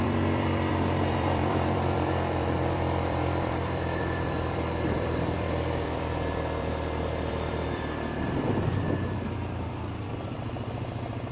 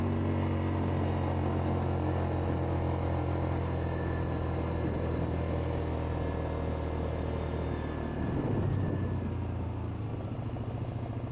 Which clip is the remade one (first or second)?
first